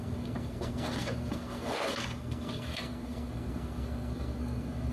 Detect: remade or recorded remade